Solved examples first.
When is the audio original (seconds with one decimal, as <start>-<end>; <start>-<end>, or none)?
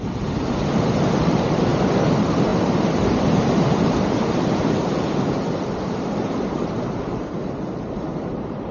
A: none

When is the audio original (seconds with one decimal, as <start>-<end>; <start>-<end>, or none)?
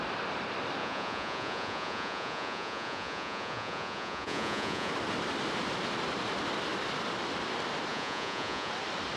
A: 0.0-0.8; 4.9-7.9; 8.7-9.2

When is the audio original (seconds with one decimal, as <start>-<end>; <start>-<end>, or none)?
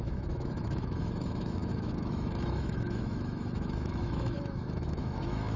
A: none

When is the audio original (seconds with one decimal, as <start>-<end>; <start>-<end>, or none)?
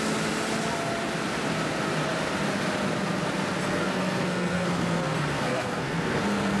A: 0.0-3.6